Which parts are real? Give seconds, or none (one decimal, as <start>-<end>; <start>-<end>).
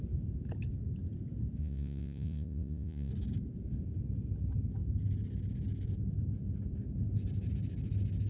0.0-1.6; 3.1-8.3